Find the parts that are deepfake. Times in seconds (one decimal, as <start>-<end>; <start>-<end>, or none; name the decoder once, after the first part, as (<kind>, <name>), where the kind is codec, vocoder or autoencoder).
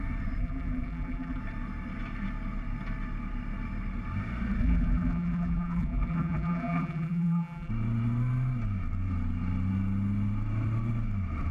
0.4-1.4 (vocoder, BigVGAN v2); 4.6-7.7